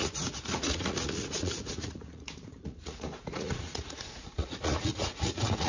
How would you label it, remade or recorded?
remade